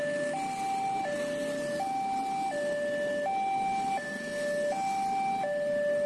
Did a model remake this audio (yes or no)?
no